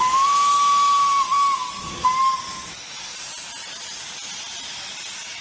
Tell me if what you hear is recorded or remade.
recorded